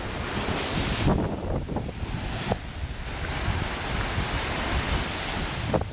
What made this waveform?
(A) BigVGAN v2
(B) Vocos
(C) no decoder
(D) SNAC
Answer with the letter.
C